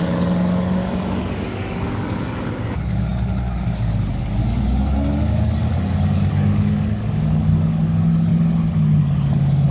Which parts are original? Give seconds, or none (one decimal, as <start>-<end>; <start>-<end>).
8.3-9.0